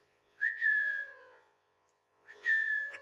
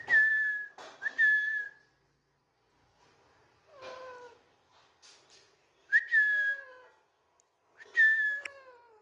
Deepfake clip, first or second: first